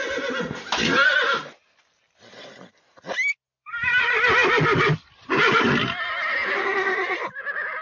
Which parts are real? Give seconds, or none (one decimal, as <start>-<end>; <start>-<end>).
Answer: 0.0-5.2; 5.7-7.8